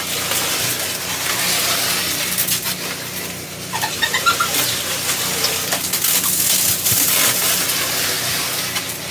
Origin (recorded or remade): recorded